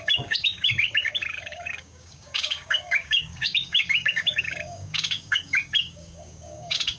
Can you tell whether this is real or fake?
fake